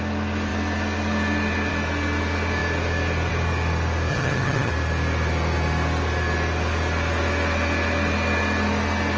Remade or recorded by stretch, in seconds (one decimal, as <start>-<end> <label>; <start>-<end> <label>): 0.0-4.1 recorded; 4.1-4.7 remade; 4.7-9.2 recorded